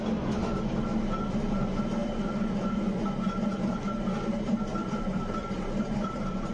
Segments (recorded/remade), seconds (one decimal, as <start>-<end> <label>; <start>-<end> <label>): 0.0-2.0 recorded; 2.0-3.0 remade; 3.0-3.5 recorded; 3.5-6.5 remade